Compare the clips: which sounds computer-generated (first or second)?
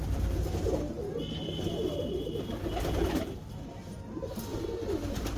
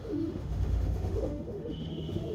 second